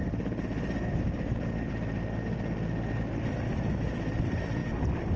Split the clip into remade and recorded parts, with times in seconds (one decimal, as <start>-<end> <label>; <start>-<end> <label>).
0.0-3.0 recorded; 3.0-4.6 remade; 4.6-5.2 recorded

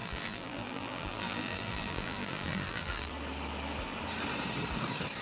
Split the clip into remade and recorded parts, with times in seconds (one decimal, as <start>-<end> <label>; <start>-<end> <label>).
0.0-3.1 remade; 3.1-5.2 recorded